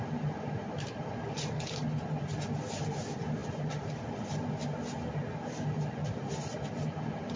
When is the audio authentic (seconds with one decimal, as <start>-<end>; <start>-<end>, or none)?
0.0-7.4